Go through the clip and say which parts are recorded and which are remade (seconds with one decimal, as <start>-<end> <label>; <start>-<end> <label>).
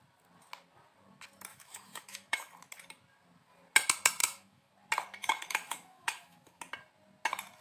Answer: 0.0-1.5 recorded; 1.5-2.5 remade; 2.5-4.2 recorded; 4.2-4.7 remade; 4.7-5.2 recorded; 5.2-6.6 remade; 6.6-7.6 recorded